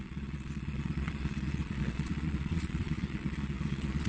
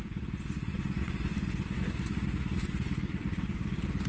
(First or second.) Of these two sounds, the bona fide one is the second